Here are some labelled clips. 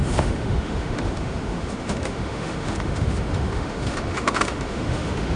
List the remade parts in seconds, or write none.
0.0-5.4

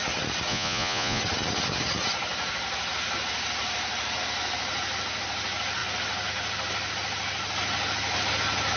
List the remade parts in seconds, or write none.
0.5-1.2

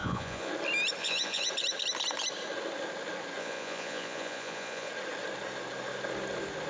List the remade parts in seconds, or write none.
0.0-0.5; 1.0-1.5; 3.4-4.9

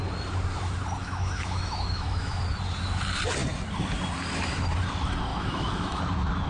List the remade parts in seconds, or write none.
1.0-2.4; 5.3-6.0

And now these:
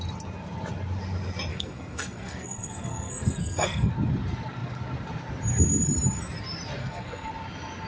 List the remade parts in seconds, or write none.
1.5-3.9; 6.8-7.3